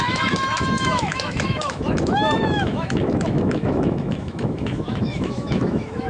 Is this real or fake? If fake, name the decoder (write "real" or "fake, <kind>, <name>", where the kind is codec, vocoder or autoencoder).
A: fake, autoencoder, DAC-VAE